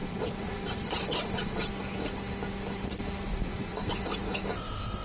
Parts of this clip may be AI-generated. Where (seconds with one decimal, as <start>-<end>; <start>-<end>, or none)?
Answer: 0.0-1.7; 3.3-3.9